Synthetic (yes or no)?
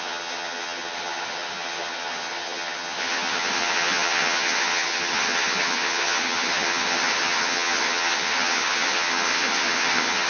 yes